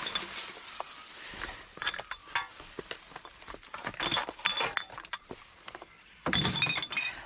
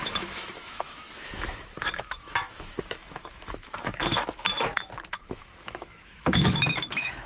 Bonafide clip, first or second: first